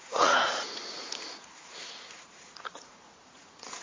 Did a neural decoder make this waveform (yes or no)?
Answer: yes